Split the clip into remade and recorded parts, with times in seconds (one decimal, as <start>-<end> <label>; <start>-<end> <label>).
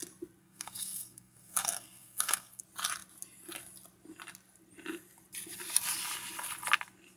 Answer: 0.0-0.4 recorded; 0.4-2.6 remade; 2.6-7.2 recorded